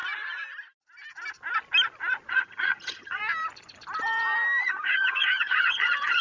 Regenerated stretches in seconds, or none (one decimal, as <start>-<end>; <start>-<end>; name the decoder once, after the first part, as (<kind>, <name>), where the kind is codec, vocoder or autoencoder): 2.3-3.2 (vocoder, HiFi-GAN); 4.6-6.2